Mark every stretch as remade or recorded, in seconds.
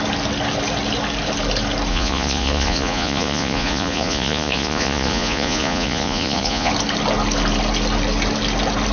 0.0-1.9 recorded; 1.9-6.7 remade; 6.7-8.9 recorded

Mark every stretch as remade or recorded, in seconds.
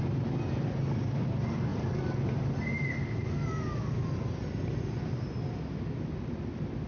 0.0-6.9 recorded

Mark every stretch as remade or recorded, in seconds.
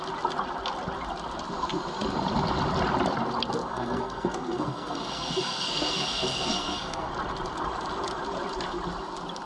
0.0-3.6 recorded; 3.6-7.1 remade; 7.1-9.5 recorded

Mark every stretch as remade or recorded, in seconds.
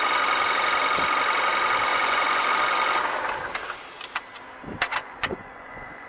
0.0-1.9 recorded; 1.9-2.5 remade; 2.5-5.0 recorded; 5.0-6.1 remade